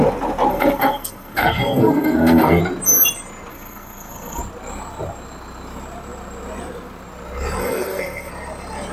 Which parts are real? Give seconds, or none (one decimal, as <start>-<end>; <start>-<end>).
0.0-0.5; 2.6-3.5; 4.4-7.6; 8.3-8.9